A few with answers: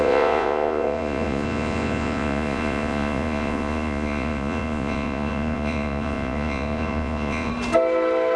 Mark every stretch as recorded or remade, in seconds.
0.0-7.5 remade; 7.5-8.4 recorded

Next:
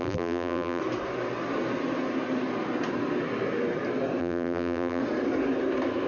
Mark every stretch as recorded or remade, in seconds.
0.0-0.8 remade; 0.8-4.2 recorded; 4.2-5.0 remade; 5.0-6.1 recorded

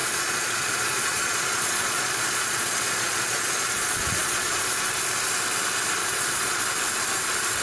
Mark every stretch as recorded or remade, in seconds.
0.0-4.6 remade; 4.6-6.0 recorded; 6.0-6.6 remade; 6.6-7.6 recorded

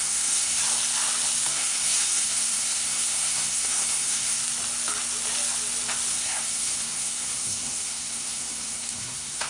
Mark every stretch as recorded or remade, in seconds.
0.0-0.6 remade; 0.6-1.5 recorded; 1.5-4.4 remade; 4.4-6.1 recorded; 6.1-9.5 remade

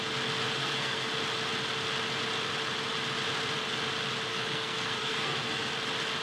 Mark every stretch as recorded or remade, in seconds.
0.0-0.6 recorded; 0.6-1.1 remade; 1.1-4.3 recorded; 4.3-5.7 remade; 5.7-6.2 recorded

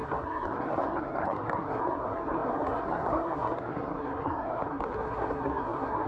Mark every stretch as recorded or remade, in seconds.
0.0-6.1 remade

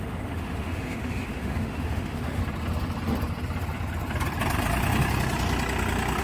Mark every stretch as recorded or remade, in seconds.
0.0-2.4 remade; 2.4-6.2 recorded